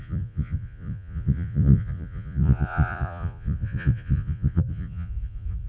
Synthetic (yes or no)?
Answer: yes